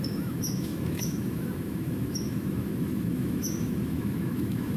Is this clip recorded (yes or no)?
no